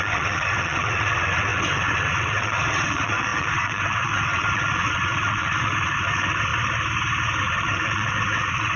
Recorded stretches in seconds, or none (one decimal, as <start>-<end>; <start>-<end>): 6.5-7.4

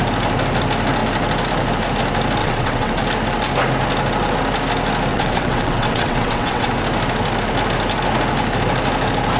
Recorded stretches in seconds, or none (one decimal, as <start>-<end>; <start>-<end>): 0.0-2.4; 3.0-5.1; 6.7-9.4

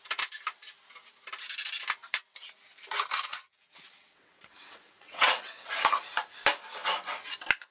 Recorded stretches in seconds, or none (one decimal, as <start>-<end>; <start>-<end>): 0.0-3.3; 5.7-7.7

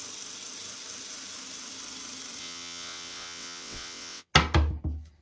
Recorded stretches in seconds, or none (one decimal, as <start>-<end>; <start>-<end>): 0.0-2.4; 4.3-5.2

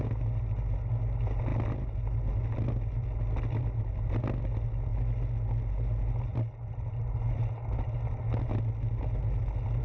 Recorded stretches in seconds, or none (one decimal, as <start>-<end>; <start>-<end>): 0.0-9.8

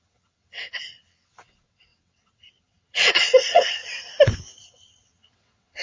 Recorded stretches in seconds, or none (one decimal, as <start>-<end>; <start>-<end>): 3.8-4.6